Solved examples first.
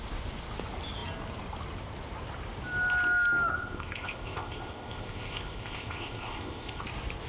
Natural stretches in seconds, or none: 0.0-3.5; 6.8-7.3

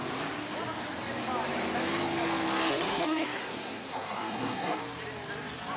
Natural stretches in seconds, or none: 0.0-2.7; 4.8-5.8